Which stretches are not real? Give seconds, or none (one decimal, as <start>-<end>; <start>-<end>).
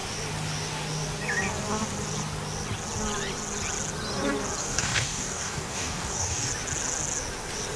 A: 4.6-6.5